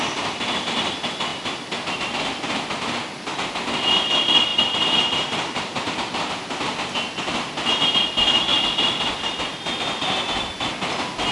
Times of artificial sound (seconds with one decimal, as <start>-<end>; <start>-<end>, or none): 4.5-6.3